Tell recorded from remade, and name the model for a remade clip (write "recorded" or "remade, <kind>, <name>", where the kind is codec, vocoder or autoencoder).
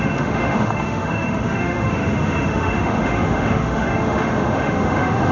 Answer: remade, autoencoder, DAC-VAE